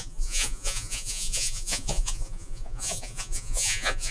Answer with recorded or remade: remade